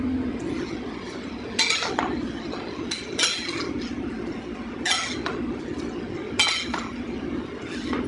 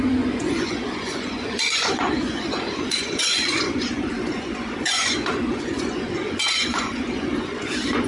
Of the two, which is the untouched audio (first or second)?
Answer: first